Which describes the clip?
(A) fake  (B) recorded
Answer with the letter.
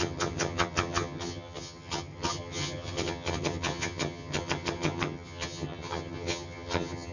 A